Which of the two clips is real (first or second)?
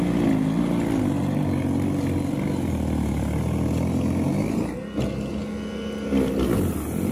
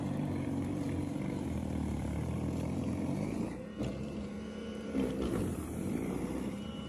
first